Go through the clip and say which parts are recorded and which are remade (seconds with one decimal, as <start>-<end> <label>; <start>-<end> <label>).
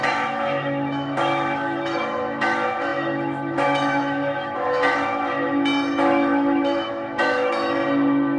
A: 0.0-7.8 remade; 7.8-8.4 recorded